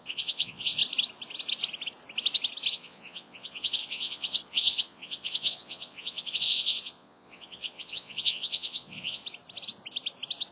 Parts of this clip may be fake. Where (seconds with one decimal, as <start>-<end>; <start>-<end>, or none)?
0.0-0.8; 2.7-9.2